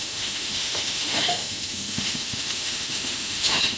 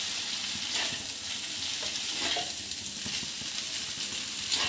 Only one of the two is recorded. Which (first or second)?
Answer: second